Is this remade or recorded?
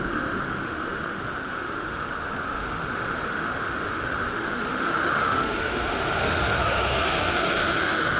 remade